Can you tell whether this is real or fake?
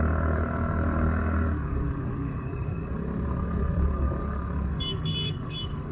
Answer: fake